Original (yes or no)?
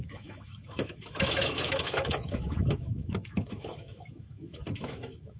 no